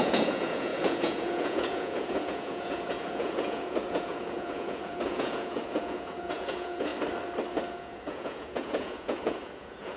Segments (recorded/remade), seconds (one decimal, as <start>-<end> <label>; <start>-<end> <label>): 0.0-6.9 remade; 6.9-7.7 recorded; 7.7-10.0 remade